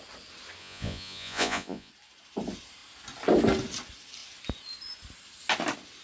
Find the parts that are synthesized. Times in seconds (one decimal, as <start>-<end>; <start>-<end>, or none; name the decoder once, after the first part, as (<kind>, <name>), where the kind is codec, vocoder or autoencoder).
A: 0.6-1.9 (vocoder, Vocos)